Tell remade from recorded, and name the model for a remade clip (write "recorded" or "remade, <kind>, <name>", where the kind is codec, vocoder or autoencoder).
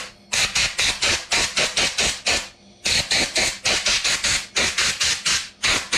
recorded